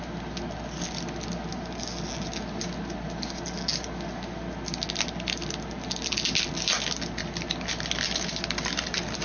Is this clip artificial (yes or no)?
no